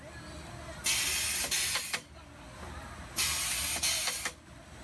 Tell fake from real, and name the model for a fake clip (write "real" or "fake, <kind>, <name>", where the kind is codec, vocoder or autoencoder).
real